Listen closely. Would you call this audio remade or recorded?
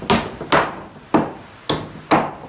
recorded